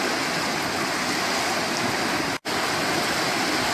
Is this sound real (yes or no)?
yes